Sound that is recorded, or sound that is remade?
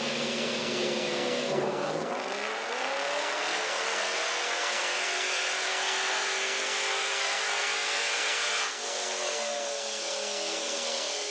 remade